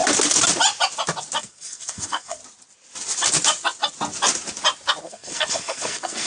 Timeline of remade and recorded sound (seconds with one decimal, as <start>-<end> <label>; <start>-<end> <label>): 0.0-1.4 recorded; 1.4-2.4 remade; 2.4-5.0 recorded; 5.0-6.3 remade